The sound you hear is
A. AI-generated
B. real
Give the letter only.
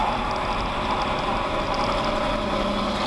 B